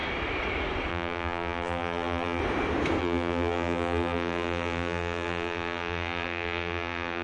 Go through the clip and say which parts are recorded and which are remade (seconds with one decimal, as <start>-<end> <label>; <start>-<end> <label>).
0.0-0.9 recorded; 0.9-2.4 remade; 2.4-3.0 recorded; 3.0-7.2 remade